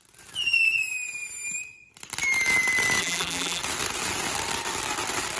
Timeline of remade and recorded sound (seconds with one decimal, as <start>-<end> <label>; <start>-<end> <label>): 0.0-3.0 recorded; 3.0-3.6 remade; 3.6-5.4 recorded